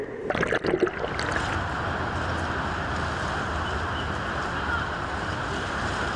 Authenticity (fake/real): real